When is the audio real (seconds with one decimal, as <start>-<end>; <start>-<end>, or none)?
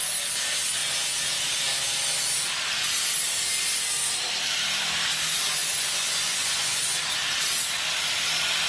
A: 0.0-5.6; 6.8-8.7